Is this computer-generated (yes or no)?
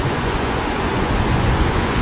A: yes